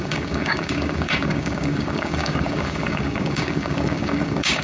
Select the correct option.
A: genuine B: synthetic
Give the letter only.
B